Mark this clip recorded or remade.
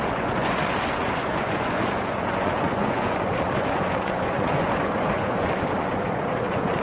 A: remade